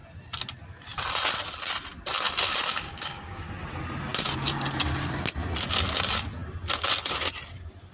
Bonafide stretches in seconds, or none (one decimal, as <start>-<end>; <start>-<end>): 0.0-2.7; 3.5-7.9